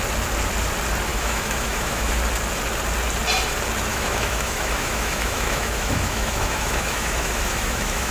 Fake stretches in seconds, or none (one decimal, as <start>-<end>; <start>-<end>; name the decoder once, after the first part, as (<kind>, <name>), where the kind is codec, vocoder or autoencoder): 1.1-2.1 (autoencoder, DAC-VAE); 3.9-8.1